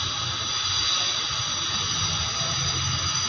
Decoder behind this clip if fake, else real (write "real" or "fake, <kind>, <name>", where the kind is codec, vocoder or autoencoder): real